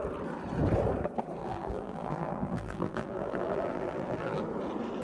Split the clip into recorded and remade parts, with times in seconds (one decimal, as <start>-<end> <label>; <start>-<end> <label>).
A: 0.0-1.4 recorded; 1.4-4.4 remade; 4.4-5.0 recorded